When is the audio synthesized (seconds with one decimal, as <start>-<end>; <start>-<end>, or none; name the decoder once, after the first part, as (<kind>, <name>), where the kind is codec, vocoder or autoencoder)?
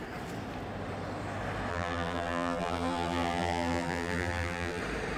1.7-4.8 (vocoder, BigVGAN v2)